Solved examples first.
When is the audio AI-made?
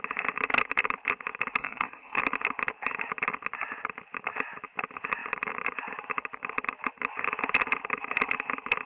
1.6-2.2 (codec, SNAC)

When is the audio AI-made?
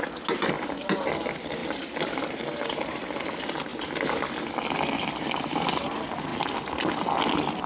1.6-2.3 (vocoder, BigVGAN v2)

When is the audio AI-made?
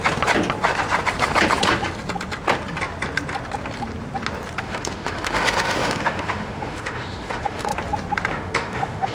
4.6-7.7 (autoencoder, DAC-VAE); 8.3-9.1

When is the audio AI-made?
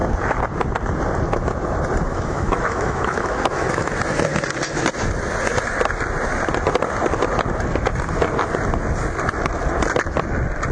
2.1-3.9 (autoencoder, DAC-VAE)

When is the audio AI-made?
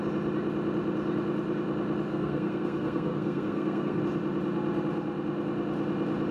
2.1-4.0 (codec, SNAC)